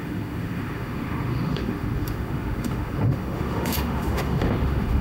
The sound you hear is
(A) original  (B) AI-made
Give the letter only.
B